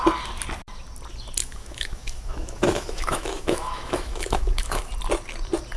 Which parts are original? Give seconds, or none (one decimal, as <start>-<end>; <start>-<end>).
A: 0.0-1.4; 4.9-5.8